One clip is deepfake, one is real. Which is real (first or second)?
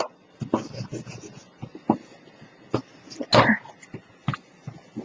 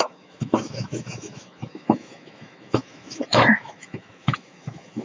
first